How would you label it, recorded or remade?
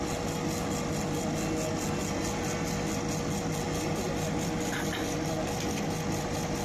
recorded